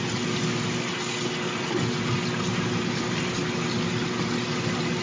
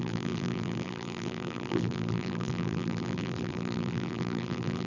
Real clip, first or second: first